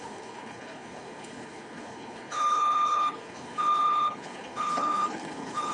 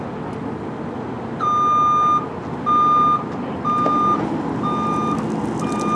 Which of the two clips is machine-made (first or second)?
first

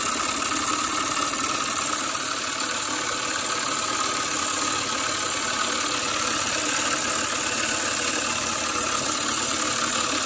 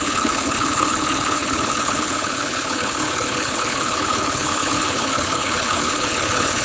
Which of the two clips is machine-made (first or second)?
second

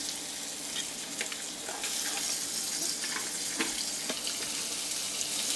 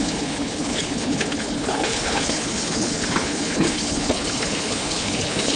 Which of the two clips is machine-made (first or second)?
second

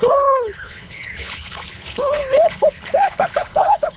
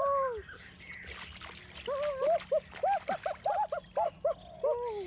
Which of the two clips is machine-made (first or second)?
first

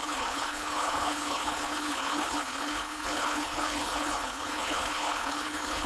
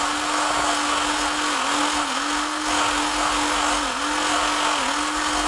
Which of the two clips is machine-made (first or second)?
first